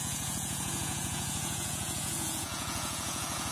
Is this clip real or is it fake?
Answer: fake